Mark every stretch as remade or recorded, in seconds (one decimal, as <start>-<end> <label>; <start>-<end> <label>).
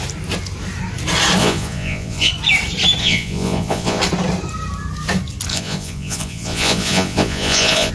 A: 0.0-1.4 recorded; 1.4-2.3 remade; 2.3-3.0 recorded; 3.0-4.0 remade; 4.0-5.5 recorded; 5.5-7.9 remade